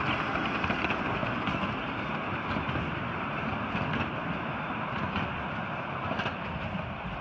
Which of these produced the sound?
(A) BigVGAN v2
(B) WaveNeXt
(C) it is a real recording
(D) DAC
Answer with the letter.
C